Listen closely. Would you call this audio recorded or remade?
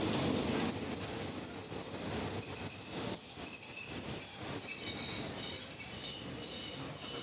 recorded